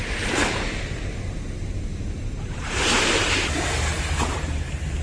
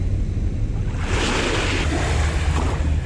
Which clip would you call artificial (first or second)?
first